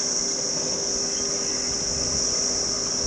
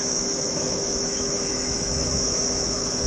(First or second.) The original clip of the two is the first